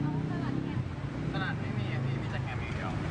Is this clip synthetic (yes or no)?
no